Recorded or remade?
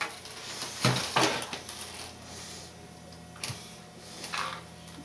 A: recorded